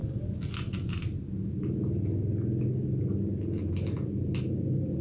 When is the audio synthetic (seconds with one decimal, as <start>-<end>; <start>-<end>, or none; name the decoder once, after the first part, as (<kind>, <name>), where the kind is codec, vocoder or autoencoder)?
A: none